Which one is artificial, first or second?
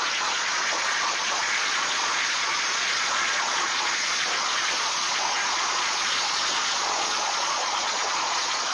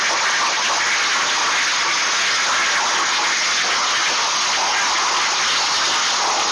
first